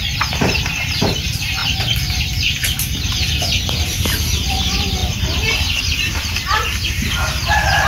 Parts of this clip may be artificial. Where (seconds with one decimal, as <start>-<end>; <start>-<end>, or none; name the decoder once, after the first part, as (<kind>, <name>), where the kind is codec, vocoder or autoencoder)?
0.0-7.9 (vocoder, BigVGAN v2)